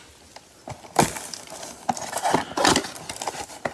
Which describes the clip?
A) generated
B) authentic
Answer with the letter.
B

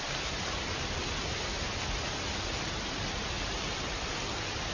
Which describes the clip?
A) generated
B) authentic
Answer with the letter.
B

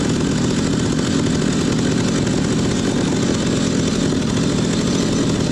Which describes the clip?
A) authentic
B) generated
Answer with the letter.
A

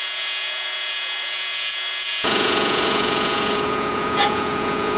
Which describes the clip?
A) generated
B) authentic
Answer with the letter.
A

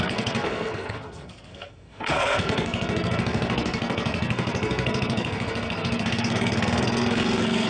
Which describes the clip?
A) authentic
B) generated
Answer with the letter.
B